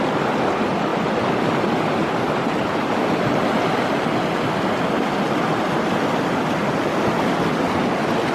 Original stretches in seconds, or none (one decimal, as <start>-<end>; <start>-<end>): 0.0-8.3